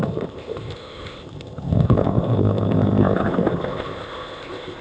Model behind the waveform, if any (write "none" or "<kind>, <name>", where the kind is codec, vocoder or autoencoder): codec, ZipCodec